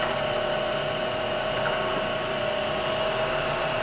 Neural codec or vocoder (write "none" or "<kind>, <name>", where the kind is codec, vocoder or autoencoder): none